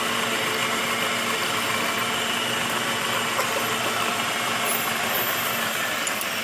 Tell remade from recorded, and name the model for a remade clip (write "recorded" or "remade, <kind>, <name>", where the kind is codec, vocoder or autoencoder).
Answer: recorded